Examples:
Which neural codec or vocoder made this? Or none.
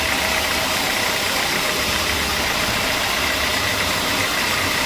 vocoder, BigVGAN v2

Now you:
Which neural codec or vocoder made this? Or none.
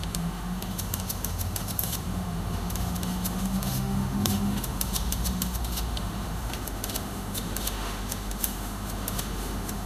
autoencoder, DAC-VAE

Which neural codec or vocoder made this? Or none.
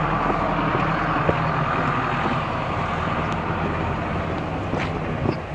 none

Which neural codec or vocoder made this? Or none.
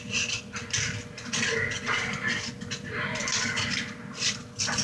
none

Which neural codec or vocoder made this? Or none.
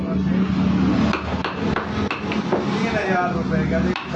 none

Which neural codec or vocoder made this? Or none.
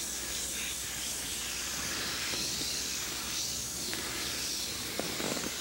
codec, DAC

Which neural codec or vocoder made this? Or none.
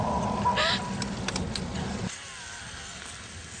none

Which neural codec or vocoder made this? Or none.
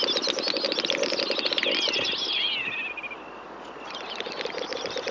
none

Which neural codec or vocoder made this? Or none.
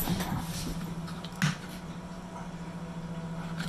none